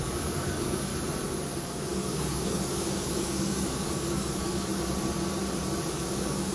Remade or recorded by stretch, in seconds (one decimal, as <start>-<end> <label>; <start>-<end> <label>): 0.0-0.9 remade; 0.9-1.5 recorded; 1.5-4.7 remade; 4.7-5.9 recorded; 5.9-6.5 remade